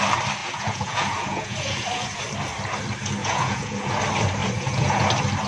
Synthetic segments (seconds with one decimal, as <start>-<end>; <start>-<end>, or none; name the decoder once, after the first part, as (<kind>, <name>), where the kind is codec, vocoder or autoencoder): 0.4-2.2 (vocoder, Vocos); 3.2-4.0; 4.4-5.1